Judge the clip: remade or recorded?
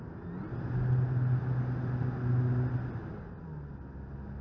recorded